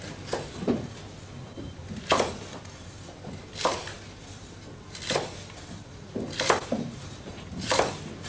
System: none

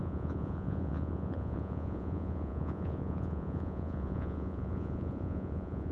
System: vocoder, Vocos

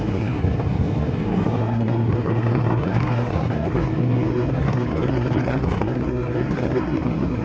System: codec, SNAC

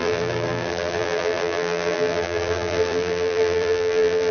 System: vocoder, BigVGAN v2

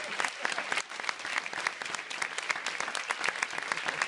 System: none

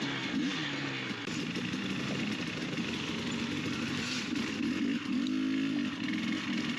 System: none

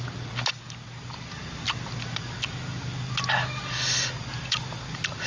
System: none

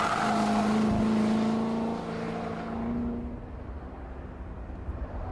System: none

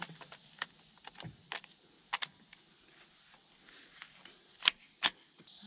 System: none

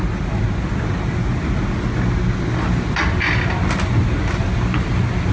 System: none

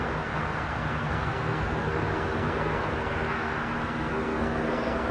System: codec, SNAC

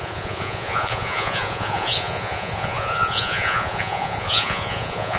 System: vocoder, Vocos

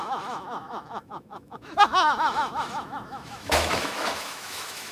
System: autoencoder, DAC-VAE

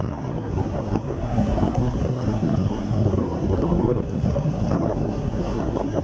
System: codec, SNAC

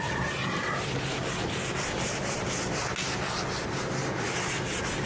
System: none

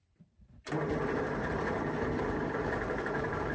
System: vocoder, BigVGAN v2